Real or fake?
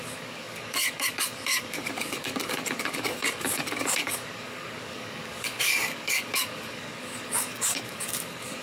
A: fake